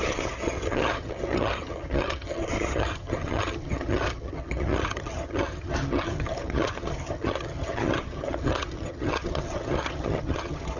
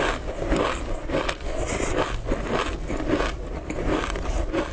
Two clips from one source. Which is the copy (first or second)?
first